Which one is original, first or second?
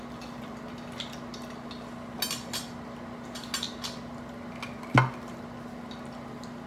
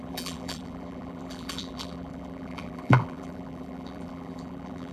first